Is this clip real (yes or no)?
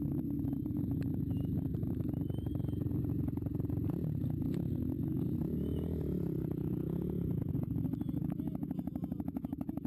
yes